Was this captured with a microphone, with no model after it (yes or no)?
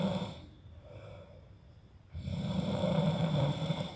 no